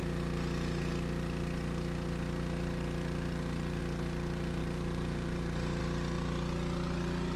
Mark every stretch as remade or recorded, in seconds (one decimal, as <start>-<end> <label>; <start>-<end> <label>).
0.0-4.6 recorded; 4.6-5.8 remade; 5.8-7.4 recorded